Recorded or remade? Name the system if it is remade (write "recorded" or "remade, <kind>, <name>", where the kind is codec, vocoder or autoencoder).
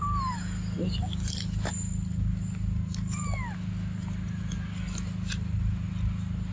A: recorded